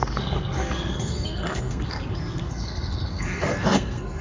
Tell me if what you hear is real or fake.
fake